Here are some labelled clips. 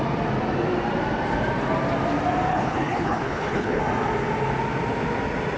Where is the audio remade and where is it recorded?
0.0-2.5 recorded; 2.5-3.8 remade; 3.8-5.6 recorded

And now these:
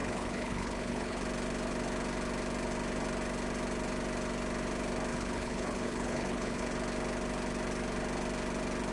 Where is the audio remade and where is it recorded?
0.0-1.2 remade; 1.2-5.1 recorded; 5.1-6.7 remade; 6.7-8.9 recorded

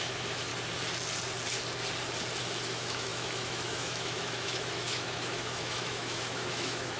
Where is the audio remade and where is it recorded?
0.0-0.5 remade; 0.5-2.4 recorded; 2.4-7.0 remade

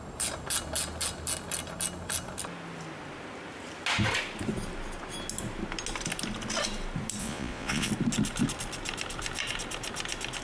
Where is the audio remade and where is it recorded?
0.0-7.2 recorded; 7.2-7.9 remade; 7.9-10.4 recorded